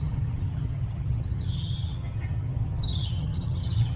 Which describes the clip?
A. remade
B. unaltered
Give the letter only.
A